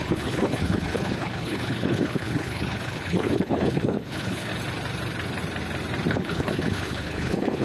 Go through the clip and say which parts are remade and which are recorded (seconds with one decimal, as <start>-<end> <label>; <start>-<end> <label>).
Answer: 0.0-4.5 remade; 4.5-6.1 recorded; 6.1-7.6 remade